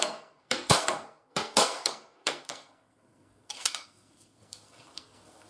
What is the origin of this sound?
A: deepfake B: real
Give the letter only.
A